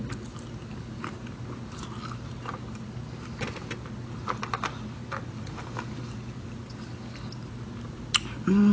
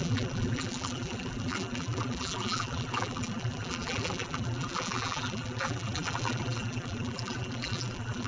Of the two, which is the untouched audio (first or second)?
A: first